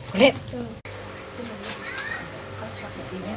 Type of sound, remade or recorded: recorded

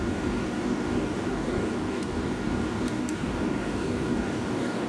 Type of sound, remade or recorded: remade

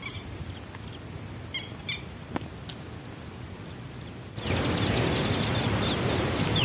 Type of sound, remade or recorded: recorded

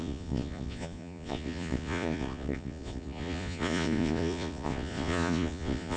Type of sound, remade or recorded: remade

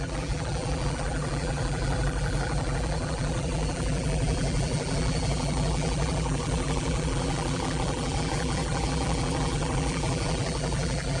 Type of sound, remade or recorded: remade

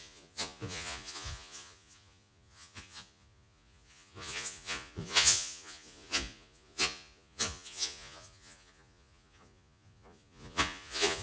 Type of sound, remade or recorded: remade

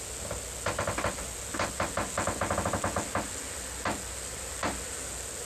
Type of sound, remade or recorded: recorded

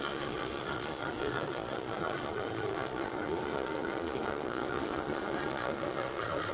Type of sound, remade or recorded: remade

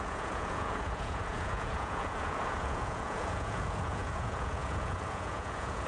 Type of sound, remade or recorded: remade